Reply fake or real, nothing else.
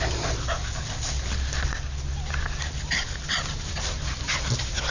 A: real